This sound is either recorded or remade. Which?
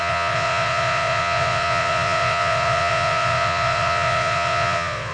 remade